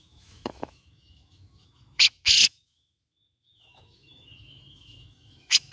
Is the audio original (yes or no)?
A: no